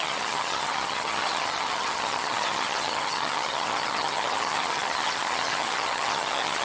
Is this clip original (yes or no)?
no